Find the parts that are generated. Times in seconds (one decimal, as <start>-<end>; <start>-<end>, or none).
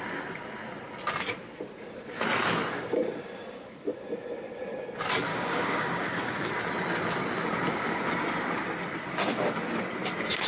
5.3-6.5